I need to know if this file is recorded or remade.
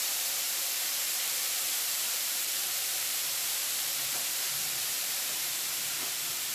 remade